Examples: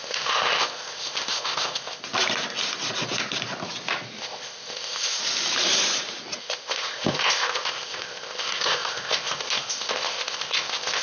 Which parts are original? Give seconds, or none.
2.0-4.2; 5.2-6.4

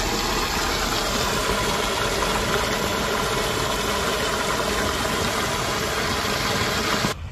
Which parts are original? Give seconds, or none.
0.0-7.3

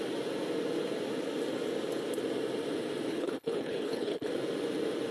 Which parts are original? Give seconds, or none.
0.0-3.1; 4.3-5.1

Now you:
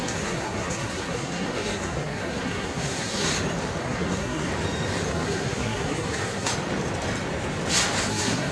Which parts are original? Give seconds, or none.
3.3-3.8; 4.5-5.1; 6.5-8.1

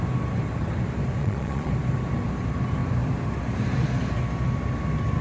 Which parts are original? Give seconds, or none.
0.0-1.2; 1.7-5.2